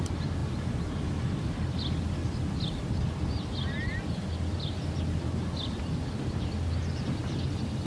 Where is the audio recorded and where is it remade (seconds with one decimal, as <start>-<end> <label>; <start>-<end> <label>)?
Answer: 0.0-7.9 recorded